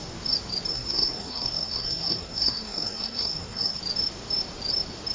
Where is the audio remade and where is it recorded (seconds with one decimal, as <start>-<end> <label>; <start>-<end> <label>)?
0.0-0.7 recorded; 0.7-3.8 remade; 3.8-5.1 recorded